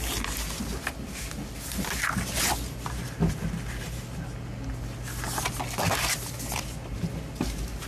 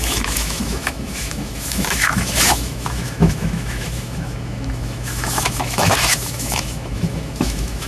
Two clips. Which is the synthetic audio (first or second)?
second